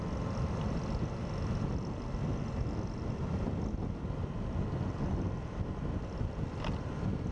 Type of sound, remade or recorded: recorded